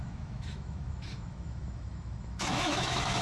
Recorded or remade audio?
remade